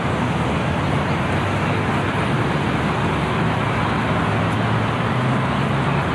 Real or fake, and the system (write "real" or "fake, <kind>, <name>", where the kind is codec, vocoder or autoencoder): real